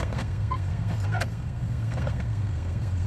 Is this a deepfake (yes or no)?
yes